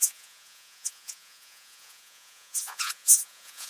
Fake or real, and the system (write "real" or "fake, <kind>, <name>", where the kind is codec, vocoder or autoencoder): fake, vocoder, Vocos